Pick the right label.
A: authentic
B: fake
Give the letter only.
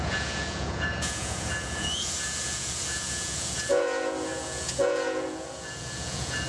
B